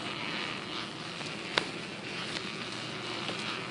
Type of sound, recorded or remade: recorded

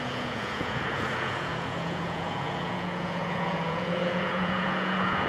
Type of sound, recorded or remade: remade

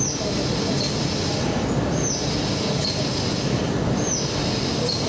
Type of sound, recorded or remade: recorded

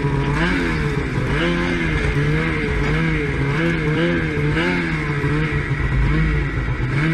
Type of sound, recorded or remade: recorded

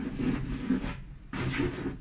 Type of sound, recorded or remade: recorded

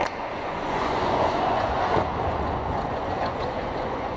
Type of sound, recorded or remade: remade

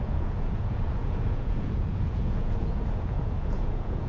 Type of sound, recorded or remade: remade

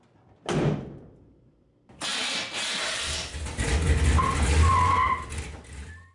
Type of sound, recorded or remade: recorded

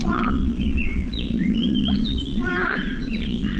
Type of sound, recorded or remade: remade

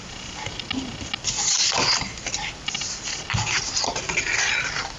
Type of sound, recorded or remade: recorded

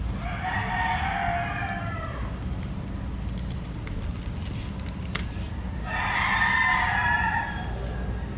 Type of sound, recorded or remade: recorded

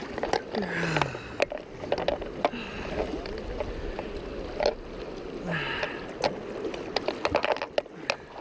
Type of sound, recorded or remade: recorded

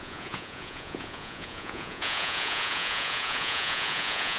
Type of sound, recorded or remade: remade